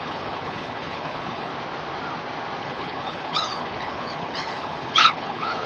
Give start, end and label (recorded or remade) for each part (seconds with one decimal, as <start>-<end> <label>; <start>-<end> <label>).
0.0-1.5 remade; 1.5-2.6 recorded; 2.6-5.7 remade